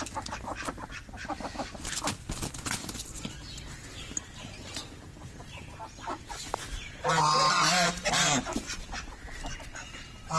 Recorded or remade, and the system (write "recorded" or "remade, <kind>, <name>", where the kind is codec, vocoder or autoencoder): recorded